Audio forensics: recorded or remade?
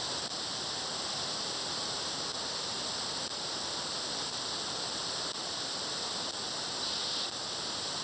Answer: recorded